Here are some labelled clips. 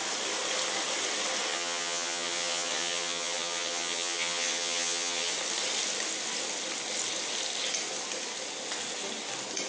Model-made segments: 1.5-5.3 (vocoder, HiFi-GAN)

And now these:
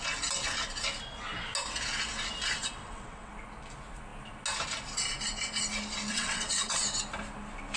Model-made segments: 2.6-3.3 (vocoder, WaveNeXt); 6.1-6.8

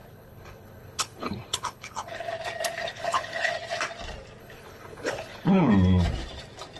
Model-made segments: 0.0-2.3 (codec, HILCodec); 2.9-3.5; 4.4-5.7